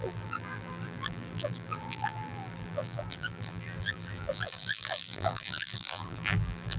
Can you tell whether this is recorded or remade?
remade